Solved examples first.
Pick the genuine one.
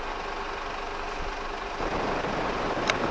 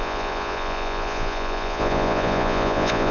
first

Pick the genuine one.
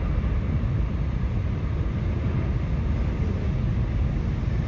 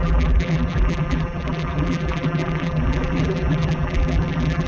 first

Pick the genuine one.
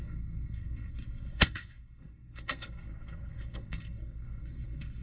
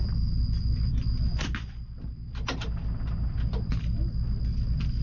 second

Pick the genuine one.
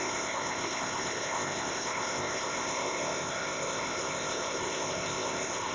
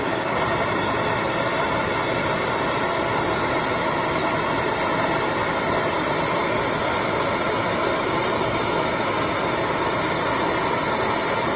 second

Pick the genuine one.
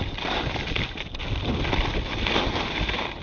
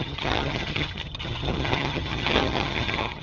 first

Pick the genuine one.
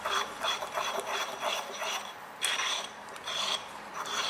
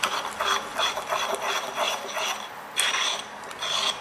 second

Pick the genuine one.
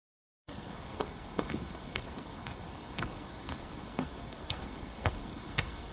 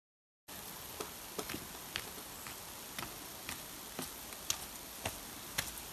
second